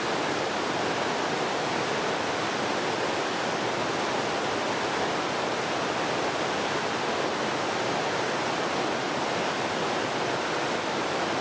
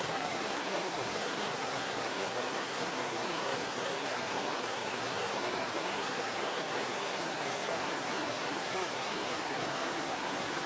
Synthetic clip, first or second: second